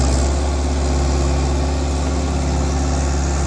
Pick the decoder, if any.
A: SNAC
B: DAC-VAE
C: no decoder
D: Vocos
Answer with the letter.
C